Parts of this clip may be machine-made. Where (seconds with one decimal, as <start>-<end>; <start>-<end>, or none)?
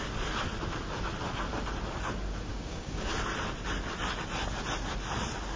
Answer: 2.5-3.1